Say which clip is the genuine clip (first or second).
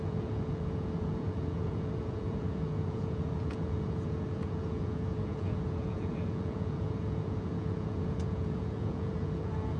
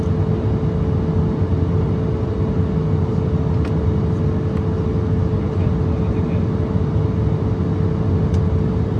second